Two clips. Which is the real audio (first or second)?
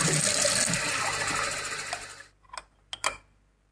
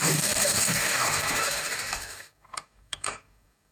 first